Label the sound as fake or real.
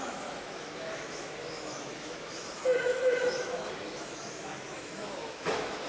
fake